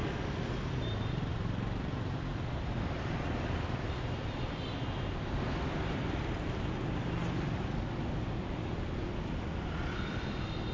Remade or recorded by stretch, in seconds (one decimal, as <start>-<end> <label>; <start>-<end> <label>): 0.0-10.7 recorded